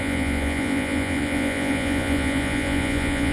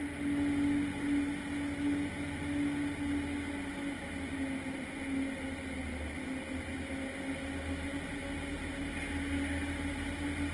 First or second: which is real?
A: second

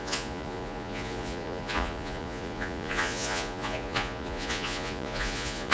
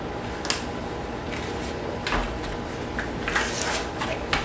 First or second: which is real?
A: second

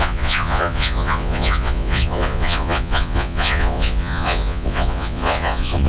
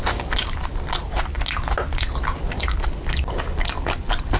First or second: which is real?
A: second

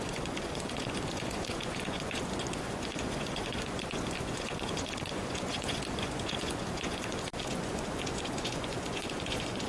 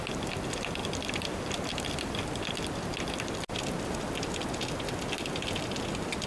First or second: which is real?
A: second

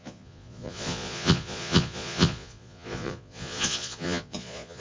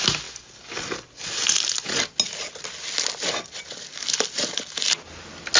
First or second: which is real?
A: second